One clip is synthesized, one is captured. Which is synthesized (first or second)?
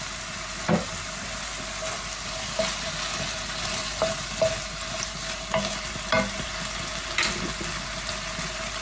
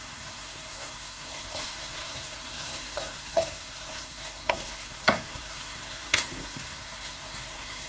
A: second